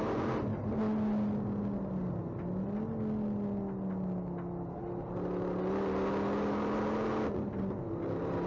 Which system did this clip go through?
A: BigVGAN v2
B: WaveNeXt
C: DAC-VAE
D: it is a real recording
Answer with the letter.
D